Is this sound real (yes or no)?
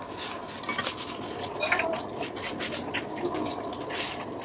yes